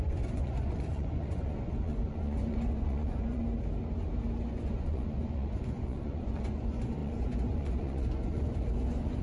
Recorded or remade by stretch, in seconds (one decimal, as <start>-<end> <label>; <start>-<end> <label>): 0.0-3.4 remade; 3.4-4.4 recorded; 4.4-9.2 remade